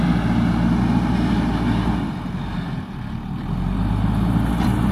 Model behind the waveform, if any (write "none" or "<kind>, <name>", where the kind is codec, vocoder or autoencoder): none